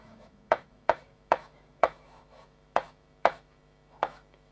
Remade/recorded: remade